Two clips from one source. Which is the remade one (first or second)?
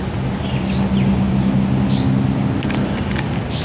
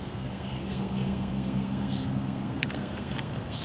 second